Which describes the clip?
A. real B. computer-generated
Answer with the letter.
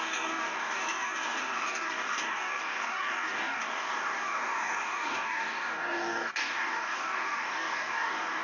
B